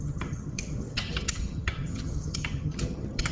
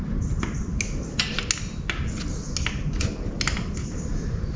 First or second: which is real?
second